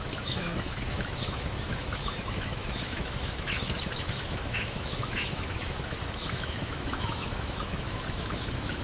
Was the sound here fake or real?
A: fake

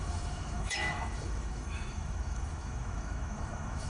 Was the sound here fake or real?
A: fake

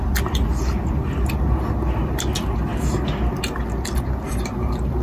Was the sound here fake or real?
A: real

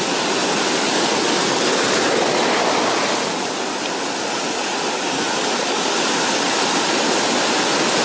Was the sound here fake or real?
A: real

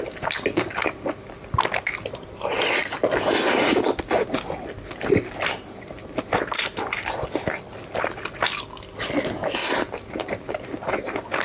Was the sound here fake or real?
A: real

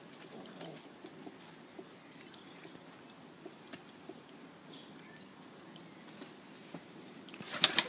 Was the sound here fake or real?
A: real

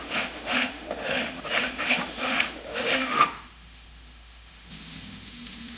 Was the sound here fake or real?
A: fake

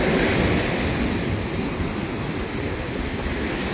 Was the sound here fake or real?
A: real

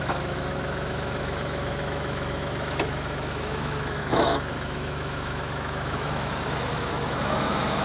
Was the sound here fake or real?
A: fake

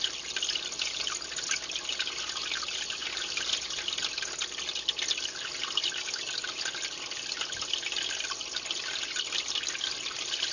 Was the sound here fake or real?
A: real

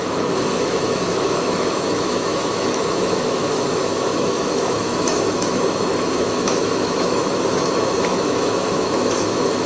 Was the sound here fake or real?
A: fake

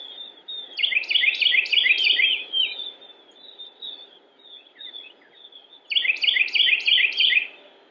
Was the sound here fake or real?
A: real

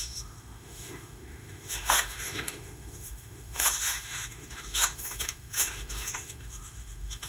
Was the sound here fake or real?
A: fake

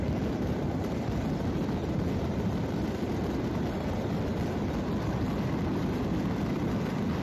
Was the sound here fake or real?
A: real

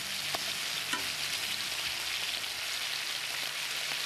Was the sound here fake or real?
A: real